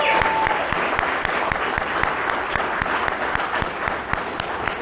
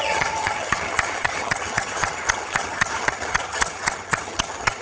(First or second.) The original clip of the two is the first